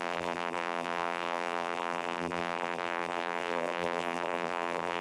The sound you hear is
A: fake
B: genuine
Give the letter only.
A